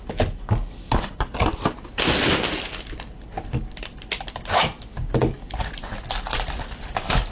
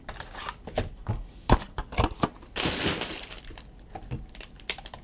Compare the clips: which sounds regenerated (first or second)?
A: second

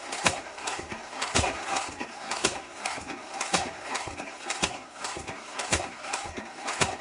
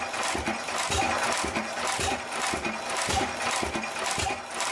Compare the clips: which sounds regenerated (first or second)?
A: first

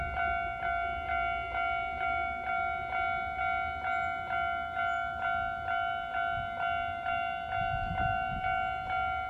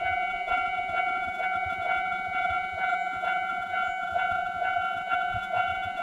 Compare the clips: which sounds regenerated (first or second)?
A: second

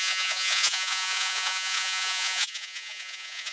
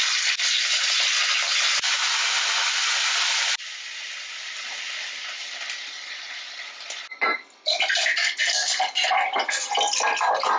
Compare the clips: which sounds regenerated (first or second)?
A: first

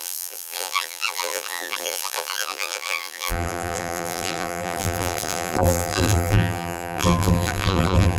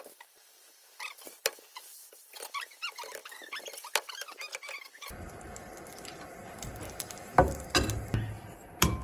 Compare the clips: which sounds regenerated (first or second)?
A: first